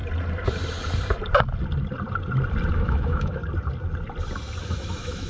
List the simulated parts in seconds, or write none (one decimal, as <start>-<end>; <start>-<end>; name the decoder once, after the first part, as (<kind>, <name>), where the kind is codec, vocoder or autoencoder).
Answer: 2.7-3.4 (autoencoder, DAC-VAE); 4.6-5.3

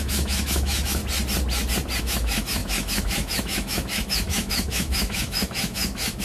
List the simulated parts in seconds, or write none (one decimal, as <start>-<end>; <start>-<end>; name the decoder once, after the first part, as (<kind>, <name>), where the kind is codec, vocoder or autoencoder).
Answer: 0.0-1.0 (autoencoder, DAC-VAE); 2.0-6.2

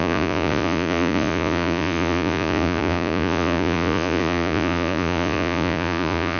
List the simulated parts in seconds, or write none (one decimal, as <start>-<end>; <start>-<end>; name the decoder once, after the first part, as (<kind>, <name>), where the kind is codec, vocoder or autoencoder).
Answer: 0.0-6.4 (vocoder, Vocos)

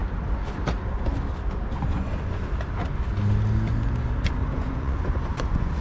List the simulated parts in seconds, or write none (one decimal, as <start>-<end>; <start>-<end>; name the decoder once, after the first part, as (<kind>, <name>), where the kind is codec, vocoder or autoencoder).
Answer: 1.9-2.4 (vocoder, Vocos); 4.4-5.8

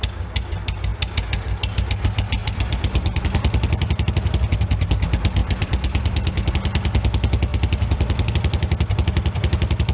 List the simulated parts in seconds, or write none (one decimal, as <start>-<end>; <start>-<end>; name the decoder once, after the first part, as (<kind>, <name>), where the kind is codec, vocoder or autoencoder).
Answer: 2.4-3.2 (vocoder, BigVGAN v2); 5.4-6.5; 7.5-8.3

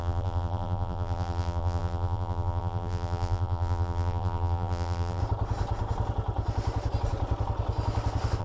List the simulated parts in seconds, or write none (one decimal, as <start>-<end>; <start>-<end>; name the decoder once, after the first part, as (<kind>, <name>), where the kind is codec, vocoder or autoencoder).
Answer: 0.0-5.2 (vocoder, BigVGAN v2)

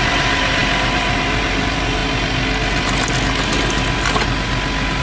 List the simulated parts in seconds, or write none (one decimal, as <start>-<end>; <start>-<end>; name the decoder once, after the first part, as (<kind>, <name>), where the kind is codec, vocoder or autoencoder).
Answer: 0.0-2.0 (vocoder, BigVGAN v2)